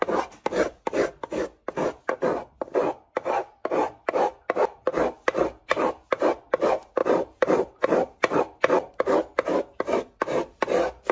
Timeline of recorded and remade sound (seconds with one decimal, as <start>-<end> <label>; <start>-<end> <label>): 0.0-3.4 recorded; 3.4-4.1 remade; 4.1-7.0 recorded; 7.0-8.6 remade; 8.6-11.1 recorded